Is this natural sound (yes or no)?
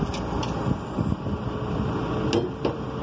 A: yes